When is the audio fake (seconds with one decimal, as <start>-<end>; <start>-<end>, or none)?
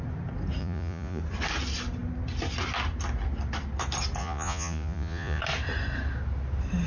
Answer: 0.6-1.2; 4.2-5.4